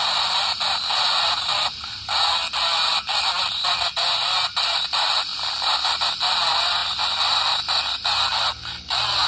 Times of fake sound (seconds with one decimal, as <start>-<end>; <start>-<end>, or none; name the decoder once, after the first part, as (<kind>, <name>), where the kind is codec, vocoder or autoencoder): 5.3-5.9 (vocoder, BigVGAN v2)